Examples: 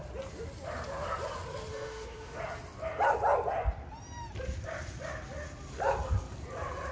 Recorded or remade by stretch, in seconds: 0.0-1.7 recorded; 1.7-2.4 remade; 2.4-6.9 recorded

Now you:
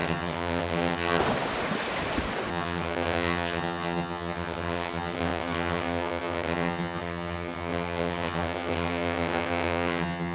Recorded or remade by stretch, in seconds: 0.0-1.2 remade; 1.2-2.5 recorded; 2.5-10.3 remade

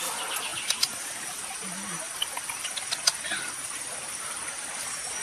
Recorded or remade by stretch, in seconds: 0.0-5.2 recorded

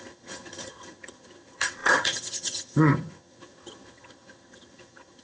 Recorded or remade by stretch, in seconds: 0.0-5.2 remade